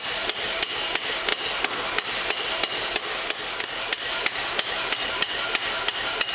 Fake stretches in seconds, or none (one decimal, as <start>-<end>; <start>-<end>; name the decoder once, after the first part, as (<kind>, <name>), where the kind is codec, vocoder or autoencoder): none